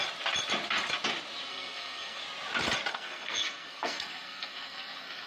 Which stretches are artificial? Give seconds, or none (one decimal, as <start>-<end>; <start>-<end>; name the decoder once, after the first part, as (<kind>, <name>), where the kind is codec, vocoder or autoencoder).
1.5-2.2 (codec, SNAC); 2.9-5.3